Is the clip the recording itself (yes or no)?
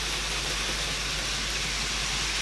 yes